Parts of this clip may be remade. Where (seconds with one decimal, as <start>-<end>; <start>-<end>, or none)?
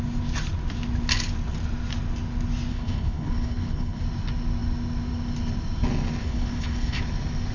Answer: 2.7-4.0; 6.2-7.0